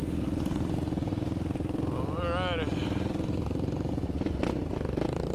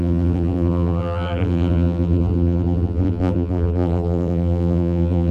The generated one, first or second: second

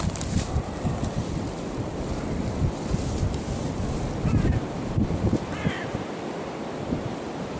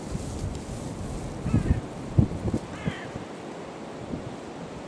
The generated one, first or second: first